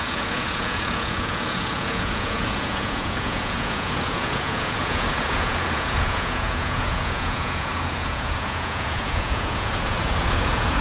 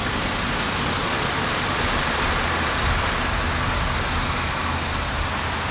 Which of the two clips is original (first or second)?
second